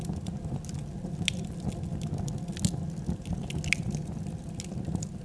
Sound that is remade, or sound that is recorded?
recorded